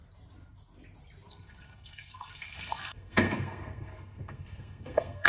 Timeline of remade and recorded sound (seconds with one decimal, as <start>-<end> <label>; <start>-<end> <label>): 0.0-1.3 recorded; 1.3-5.3 remade